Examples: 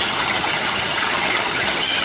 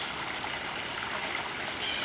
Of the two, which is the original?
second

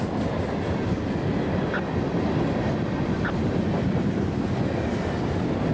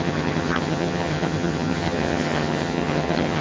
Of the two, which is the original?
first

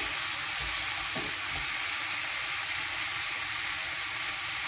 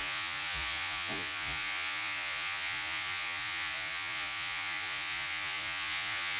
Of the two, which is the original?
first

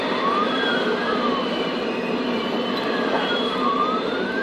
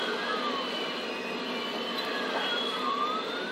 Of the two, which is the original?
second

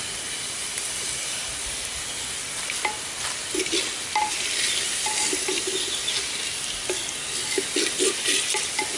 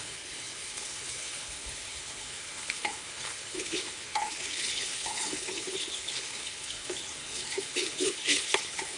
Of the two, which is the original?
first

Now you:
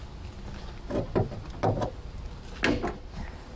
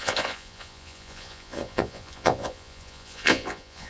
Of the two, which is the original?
first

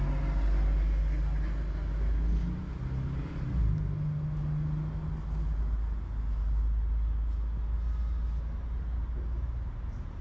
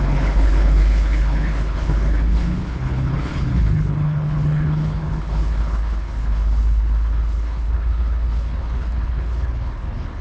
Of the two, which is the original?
first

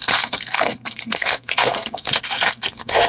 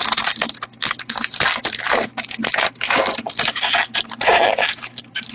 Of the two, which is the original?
second